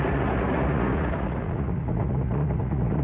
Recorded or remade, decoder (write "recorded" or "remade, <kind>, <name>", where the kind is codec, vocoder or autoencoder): remade, vocoder, Vocos